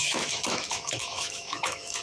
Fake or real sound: fake